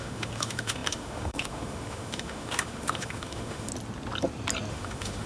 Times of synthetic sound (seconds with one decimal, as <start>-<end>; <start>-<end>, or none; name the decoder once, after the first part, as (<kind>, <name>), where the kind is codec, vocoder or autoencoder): 0.0-3.7 (autoencoder, DAC-VAE); 4.7-5.3